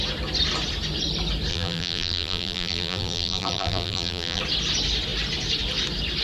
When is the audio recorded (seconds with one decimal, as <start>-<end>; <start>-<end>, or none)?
0.0-1.5; 4.4-6.2